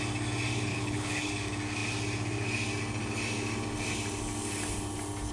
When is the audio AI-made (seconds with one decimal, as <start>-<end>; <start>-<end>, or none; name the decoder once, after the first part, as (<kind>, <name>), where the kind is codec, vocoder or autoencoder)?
0.7-1.3 (codec, HILCodec)